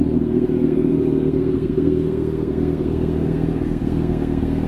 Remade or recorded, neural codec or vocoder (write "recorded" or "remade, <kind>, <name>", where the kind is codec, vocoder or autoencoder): remade, codec, SNAC